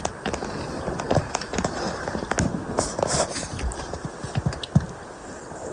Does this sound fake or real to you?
real